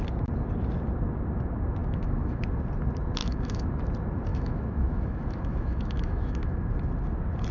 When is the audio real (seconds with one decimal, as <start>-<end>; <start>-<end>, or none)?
0.0-1.8; 2.4-3.2; 3.8-4.3; 6.6-7.5